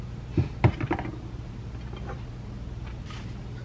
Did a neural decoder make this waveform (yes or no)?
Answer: no